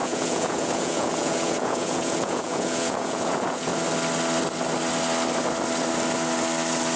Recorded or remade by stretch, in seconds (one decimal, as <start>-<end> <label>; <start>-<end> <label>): 0.0-3.7 remade; 3.7-7.0 recorded